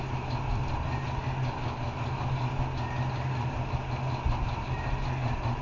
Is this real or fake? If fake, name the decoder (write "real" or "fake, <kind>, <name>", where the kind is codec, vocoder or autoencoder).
real